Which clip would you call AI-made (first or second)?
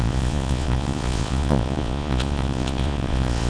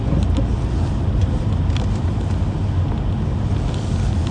first